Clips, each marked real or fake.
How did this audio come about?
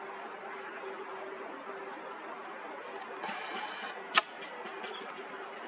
real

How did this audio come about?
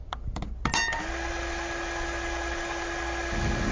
real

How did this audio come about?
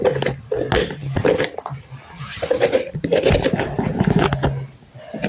real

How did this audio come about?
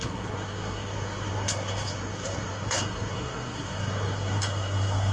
fake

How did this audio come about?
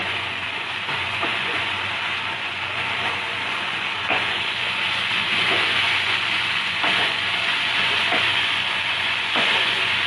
fake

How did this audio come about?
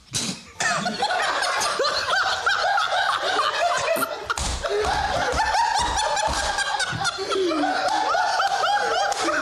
real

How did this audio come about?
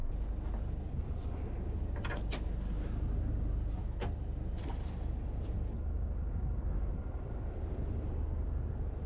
real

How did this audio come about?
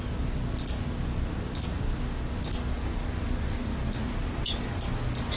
real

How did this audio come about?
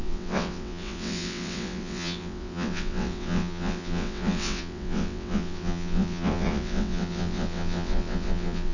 fake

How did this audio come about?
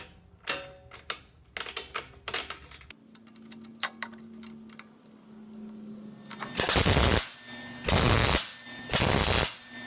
real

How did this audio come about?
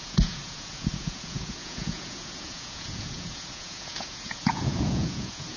fake